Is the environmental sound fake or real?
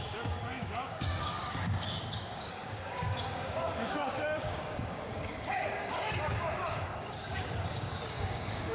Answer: fake